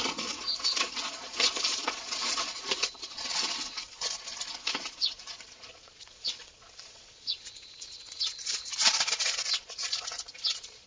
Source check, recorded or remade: remade